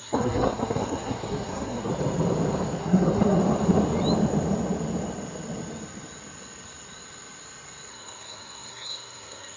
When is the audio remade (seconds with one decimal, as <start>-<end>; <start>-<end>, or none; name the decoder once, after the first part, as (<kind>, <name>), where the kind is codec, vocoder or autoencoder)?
0.0-1.9 (codec, SNAC); 2.8-3.4; 7.9-9.6